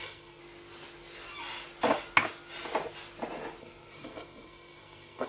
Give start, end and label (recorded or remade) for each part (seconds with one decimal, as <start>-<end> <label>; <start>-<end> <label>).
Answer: 0.0-0.4 remade; 0.4-3.6 recorded; 3.6-5.3 remade